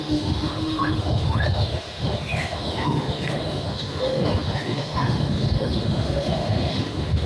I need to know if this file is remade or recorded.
remade